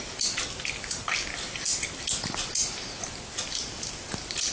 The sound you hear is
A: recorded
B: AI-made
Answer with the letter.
A